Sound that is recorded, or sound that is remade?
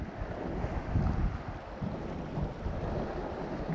recorded